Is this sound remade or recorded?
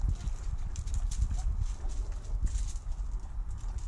recorded